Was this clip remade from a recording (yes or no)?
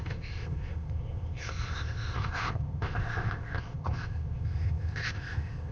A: yes